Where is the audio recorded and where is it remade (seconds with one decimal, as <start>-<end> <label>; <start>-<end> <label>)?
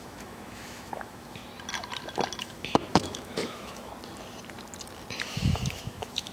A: 0.0-1.4 remade; 1.4-2.4 recorded; 2.4-3.9 remade; 3.9-5.2 recorded; 5.2-6.3 remade